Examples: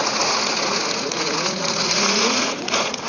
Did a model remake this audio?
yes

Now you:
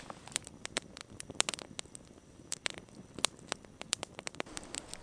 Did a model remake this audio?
no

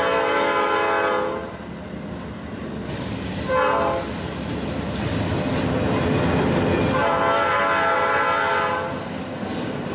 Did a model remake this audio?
no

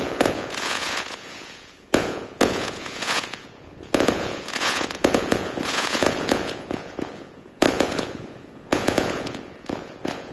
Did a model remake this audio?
yes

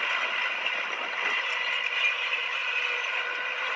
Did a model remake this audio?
no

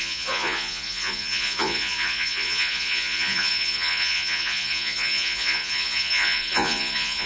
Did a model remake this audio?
yes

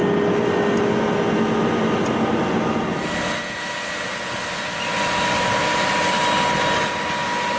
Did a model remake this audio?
no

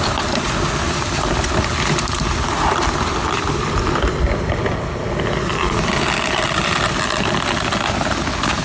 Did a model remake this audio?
no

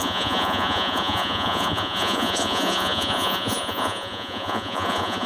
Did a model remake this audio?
yes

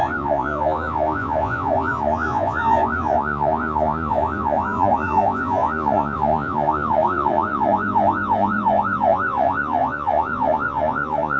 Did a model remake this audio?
yes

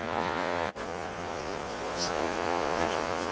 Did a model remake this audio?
yes